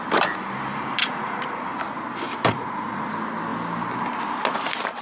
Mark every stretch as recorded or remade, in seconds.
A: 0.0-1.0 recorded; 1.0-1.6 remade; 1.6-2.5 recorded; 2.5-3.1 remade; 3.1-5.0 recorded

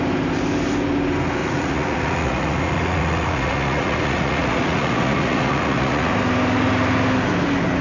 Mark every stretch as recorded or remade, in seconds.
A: 0.0-1.4 recorded; 1.4-6.1 remade; 6.1-7.8 recorded

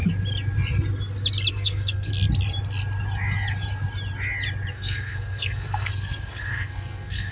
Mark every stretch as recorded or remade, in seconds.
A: 0.0-1.5 recorded; 1.5-2.1 remade; 2.1-4.7 recorded; 4.7-7.3 remade

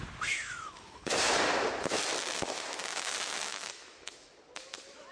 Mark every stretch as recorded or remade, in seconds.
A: 0.0-0.4 recorded; 0.4-1.1 remade; 1.1-3.5 recorded; 3.5-4.3 remade; 4.3-5.1 recorded

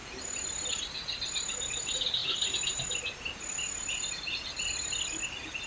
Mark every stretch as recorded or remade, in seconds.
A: 0.0-2.2 recorded; 2.2-2.8 remade; 2.8-5.7 recorded

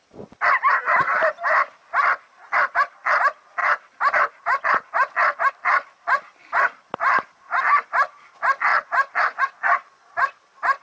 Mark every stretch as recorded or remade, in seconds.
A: 0.0-8.7 recorded; 8.7-9.4 remade; 9.4-10.8 recorded